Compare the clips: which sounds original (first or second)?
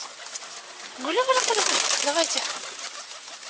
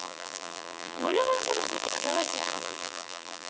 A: first